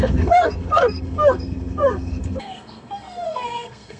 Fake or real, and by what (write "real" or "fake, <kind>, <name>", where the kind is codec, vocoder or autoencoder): fake, codec, SNAC